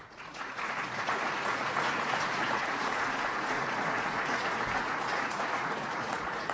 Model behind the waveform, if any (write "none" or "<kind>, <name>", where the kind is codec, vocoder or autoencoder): vocoder, Vocos